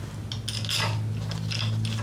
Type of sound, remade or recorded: recorded